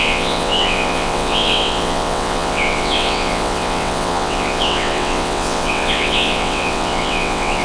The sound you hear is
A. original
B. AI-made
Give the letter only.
B